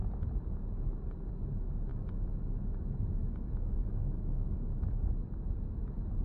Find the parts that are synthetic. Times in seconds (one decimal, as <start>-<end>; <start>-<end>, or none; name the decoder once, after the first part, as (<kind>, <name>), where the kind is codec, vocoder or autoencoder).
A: 1.9-2.6 (autoencoder, DAC-VAE); 3.2-5.1